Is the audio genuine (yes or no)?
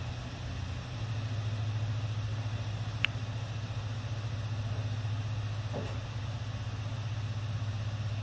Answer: yes